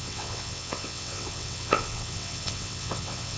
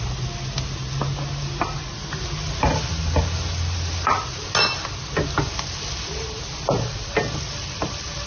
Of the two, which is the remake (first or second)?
first